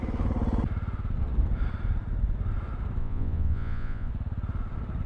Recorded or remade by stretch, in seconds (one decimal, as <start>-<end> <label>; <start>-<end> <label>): 0.0-3.0 recorded; 3.0-4.1 remade; 4.1-5.1 recorded